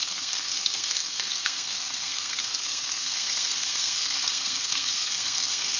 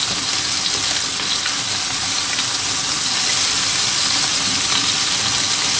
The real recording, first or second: second